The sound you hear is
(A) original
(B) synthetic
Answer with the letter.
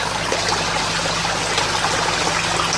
A